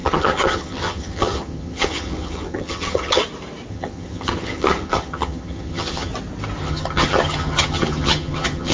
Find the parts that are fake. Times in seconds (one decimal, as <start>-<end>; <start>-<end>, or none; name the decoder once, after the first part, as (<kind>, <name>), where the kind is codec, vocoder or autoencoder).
0.0-3.2 (vocoder, HiFi-GAN); 3.7-6.1; 6.6-8.7